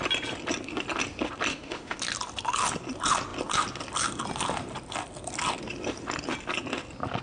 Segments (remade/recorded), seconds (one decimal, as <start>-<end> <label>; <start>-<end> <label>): 0.0-1.5 recorded; 1.5-2.0 remade; 2.0-7.2 recorded